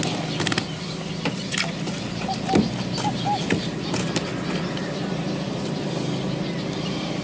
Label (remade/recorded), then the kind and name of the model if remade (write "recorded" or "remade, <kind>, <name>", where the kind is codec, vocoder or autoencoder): recorded